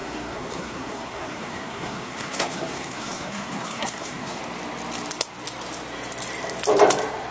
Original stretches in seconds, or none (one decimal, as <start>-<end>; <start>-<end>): 4.4-7.3